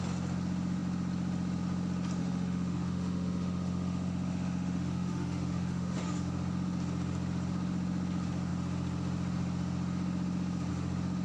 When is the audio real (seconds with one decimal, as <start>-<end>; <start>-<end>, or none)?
0.0-2.2; 6.2-11.2